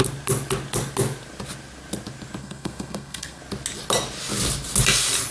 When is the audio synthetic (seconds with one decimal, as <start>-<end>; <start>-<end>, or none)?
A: 2.4-3.4